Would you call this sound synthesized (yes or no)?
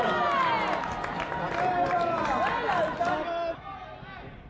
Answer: no